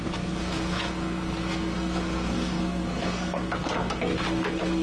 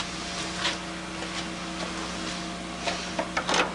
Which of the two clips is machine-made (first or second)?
first